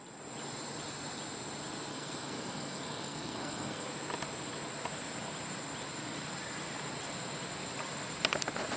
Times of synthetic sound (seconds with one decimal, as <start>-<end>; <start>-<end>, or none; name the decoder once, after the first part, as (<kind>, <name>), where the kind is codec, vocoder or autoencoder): 1.9-3.9 (codec, SNAC)